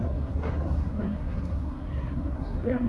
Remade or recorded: remade